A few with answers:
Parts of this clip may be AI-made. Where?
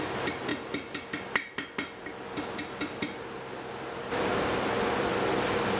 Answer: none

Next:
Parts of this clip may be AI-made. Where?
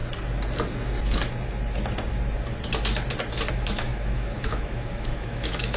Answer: 3.5-5.8 (autoencoder, DAC-VAE)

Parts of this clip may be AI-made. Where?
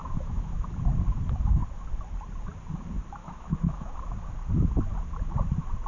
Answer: 0.0-0.7 (autoencoder, DAC-VAE); 3.2-3.9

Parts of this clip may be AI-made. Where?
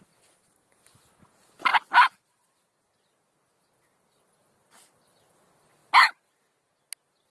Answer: none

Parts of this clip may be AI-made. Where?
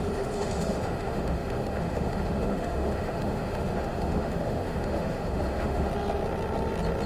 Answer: 0.0-5.9 (autoencoder, DAC-VAE)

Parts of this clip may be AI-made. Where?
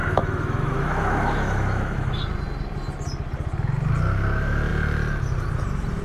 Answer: 0.0-2.2 (autoencoder, DAC-VAE)